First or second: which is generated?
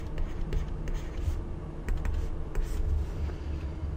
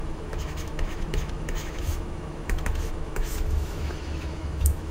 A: second